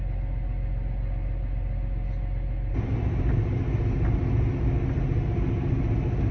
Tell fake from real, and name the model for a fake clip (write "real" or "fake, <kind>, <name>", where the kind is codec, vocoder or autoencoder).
real